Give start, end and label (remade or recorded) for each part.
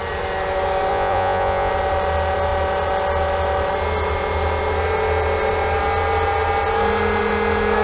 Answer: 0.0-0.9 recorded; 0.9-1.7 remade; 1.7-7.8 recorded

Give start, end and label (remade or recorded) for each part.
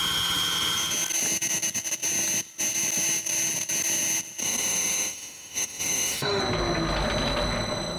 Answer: 0.0-4.4 recorded; 4.4-6.4 remade; 6.4-8.0 recorded